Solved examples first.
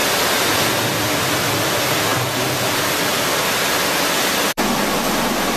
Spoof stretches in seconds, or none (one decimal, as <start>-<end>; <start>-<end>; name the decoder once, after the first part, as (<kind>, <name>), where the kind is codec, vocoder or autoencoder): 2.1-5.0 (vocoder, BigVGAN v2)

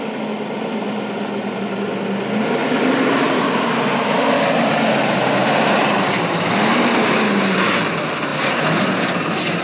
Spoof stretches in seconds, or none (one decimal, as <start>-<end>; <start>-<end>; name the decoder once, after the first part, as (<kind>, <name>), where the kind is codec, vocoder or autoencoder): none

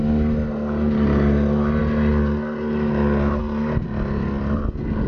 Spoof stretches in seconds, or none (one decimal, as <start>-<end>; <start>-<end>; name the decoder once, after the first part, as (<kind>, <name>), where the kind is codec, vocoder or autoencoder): none

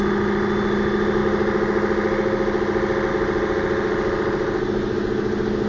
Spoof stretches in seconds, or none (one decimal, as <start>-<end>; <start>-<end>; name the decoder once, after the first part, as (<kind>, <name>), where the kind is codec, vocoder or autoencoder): none

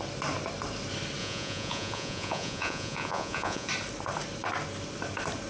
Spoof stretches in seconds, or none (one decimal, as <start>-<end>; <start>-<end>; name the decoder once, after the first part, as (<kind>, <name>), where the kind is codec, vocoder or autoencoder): 1.2-3.7 (vocoder, Vocos)

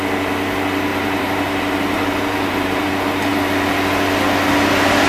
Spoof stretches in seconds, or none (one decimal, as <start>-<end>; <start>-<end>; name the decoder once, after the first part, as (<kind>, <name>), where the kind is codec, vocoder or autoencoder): 0.9-2.9 (vocoder, BigVGAN v2)

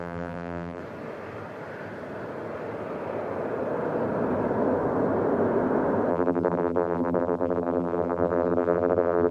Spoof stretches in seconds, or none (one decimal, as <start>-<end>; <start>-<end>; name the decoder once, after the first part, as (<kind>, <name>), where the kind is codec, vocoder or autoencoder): 0.0-0.8 (vocoder, BigVGAN v2); 6.1-9.3